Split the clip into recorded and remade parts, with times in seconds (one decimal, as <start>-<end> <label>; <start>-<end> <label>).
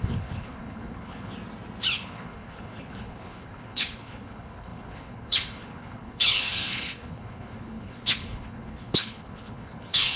0.0-1.3 remade; 1.3-1.9 recorded; 1.9-10.2 remade